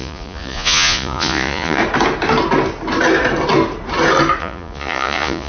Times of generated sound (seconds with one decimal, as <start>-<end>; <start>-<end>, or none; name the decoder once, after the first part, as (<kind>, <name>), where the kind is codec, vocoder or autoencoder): 0.0-1.8 (vocoder, Vocos); 4.4-5.5